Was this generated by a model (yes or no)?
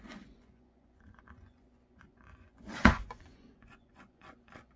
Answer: yes